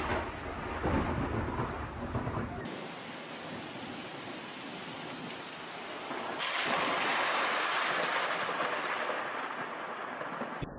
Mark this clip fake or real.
real